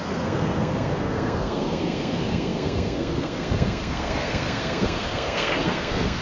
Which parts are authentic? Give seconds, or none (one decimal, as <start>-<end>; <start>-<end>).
none